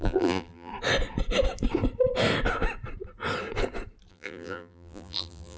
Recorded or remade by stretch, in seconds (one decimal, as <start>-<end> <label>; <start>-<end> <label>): 0.0-0.7 remade; 0.7-4.1 recorded; 4.1-5.6 remade